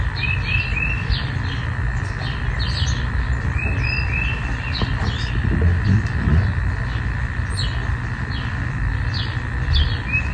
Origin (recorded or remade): recorded